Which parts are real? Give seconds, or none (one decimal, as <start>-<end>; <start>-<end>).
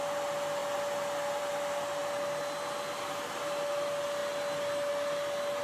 0.0-5.6